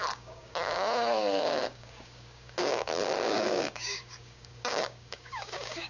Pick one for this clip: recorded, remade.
remade